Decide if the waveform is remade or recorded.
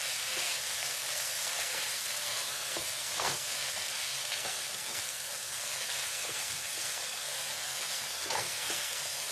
remade